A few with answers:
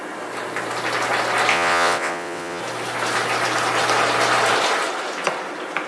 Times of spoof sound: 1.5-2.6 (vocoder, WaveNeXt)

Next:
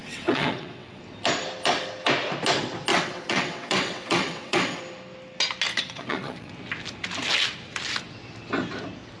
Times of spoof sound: 0.0-1.0 (vocoder, WaveNeXt); 2.9-4.8; 5.7-6.5

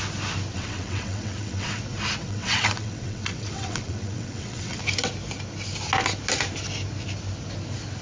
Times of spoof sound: 0.5-1.8 (vocoder, WaveNeXt); 2.2-4.8

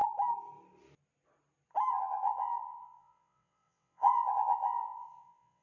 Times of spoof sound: 1.9-5.6 (vocoder, WaveNeXt)

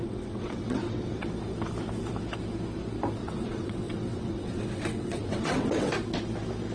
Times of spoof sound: 0.0-1.3 (vocoder, WaveNeXt); 3.2-5.9